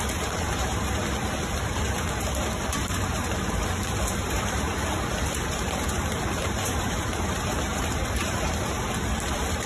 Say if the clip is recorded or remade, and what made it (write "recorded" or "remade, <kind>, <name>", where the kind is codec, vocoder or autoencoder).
remade, vocoder, BigVGAN v2